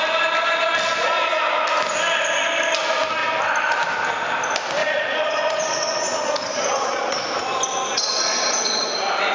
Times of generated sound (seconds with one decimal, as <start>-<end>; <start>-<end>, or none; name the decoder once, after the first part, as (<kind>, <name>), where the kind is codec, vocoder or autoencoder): 4.8-7.2 (vocoder, Vocos); 7.9-8.8

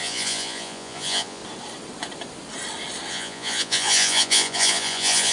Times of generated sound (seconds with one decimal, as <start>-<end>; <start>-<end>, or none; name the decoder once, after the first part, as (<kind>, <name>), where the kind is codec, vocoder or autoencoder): 0.0-1.4 (vocoder, Vocos); 3.1-5.3

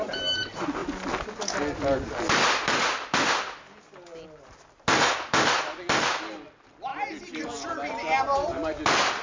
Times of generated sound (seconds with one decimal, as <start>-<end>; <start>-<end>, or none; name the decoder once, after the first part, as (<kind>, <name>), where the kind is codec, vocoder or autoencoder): none

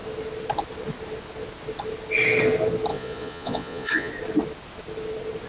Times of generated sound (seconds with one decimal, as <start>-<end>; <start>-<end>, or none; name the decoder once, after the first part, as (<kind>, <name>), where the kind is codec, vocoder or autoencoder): 2.9-4.1 (vocoder, Vocos)

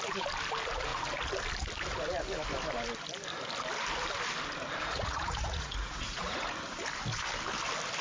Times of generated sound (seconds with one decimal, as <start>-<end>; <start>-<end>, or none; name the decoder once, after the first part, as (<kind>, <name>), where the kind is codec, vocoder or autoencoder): 4.8-6.5 (vocoder, Vocos)

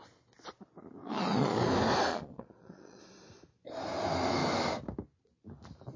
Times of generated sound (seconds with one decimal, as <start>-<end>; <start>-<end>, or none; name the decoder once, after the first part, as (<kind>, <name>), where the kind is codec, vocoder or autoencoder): 1.0-1.6 (vocoder, Vocos); 2.1-3.0

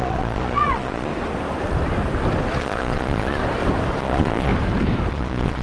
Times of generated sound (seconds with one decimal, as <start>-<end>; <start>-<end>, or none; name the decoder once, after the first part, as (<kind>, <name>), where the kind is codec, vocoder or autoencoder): 0.0-1.1 (vocoder, Vocos); 2.6-3.4; 4.0-4.5; 5.1-5.6